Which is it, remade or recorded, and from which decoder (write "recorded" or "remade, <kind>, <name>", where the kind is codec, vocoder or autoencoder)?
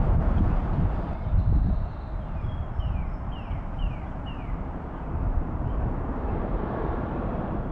remade, vocoder, BigVGAN v2